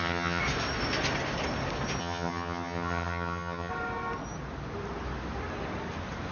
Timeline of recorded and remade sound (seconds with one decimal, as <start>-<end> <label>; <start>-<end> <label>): 0.0-0.4 remade; 0.4-2.0 recorded; 2.0-3.7 remade; 3.7-6.3 recorded